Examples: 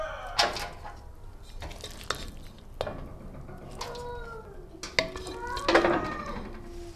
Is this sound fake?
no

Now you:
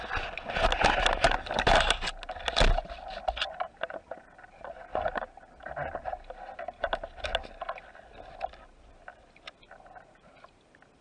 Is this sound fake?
no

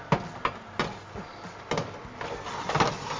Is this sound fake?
no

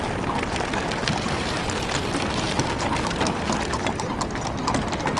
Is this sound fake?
no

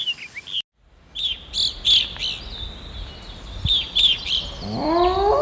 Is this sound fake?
no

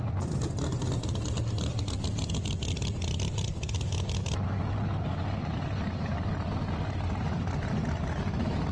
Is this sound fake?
no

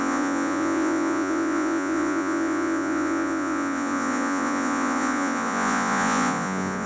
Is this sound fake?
yes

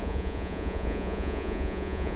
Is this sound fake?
yes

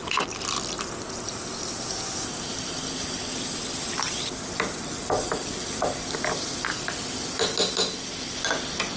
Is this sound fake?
no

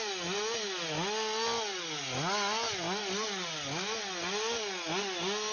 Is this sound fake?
no